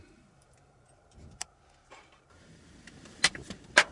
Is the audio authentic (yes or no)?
no